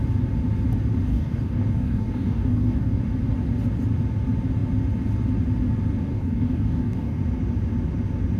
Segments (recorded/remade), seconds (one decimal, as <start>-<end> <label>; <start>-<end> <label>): 0.0-1.1 recorded; 1.1-3.0 remade; 3.0-6.1 recorded; 6.1-7.2 remade; 7.2-8.4 recorded